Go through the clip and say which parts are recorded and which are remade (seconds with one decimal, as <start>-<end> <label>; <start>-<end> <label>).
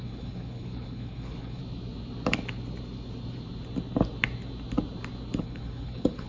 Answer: 0.0-1.6 remade; 1.6-5.4 recorded; 5.4-6.3 remade